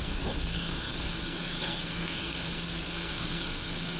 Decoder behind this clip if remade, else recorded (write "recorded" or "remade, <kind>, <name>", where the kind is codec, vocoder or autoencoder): remade, codec, SNAC